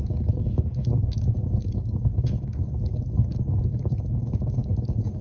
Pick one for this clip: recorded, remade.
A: remade